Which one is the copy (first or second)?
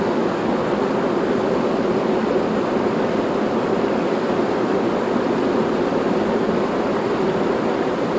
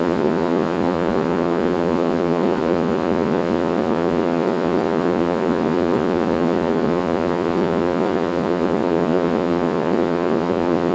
second